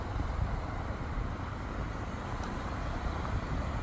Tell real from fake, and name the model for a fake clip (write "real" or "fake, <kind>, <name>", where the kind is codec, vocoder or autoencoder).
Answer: real